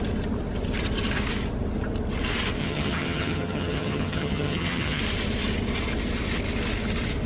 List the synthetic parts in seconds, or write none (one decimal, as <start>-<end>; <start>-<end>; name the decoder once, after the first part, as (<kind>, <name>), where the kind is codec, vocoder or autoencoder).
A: 2.6-5.0 (vocoder, HiFi-GAN)